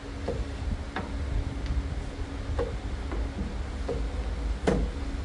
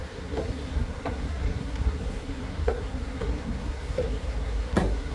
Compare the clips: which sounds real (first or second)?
first